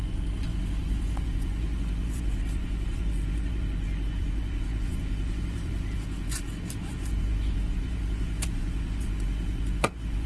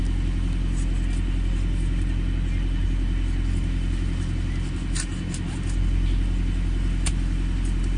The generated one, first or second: first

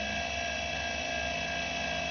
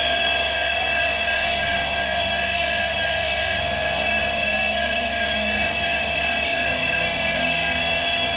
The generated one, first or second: second